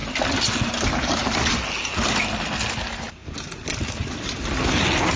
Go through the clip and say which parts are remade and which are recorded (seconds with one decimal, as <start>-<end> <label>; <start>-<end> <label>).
0.0-5.2 recorded